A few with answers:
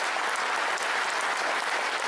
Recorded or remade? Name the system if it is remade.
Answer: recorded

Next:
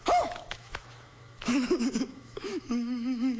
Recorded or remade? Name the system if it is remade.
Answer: remade, autoencoder, DAC-VAE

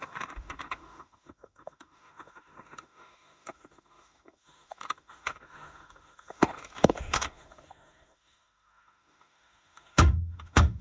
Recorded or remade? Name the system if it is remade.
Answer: remade, autoencoder, DAC-VAE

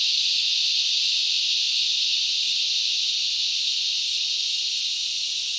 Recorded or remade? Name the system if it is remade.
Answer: recorded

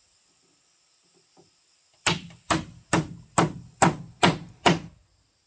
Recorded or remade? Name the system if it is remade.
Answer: recorded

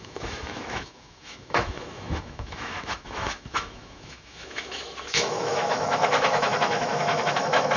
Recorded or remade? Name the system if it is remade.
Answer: remade, autoencoder, DAC-VAE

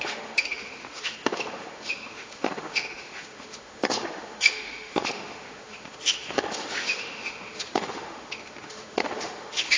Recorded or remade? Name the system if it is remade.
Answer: remade, autoencoder, DAC-VAE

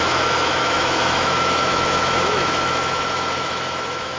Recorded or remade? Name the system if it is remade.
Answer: remade, autoencoder, DAC-VAE